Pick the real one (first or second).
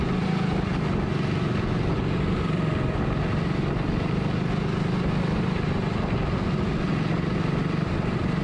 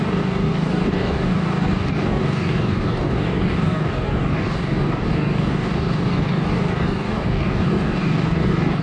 first